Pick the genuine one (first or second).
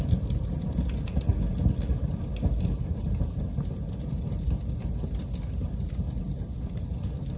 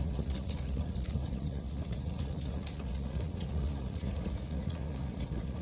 first